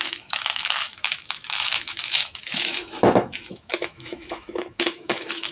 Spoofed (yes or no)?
yes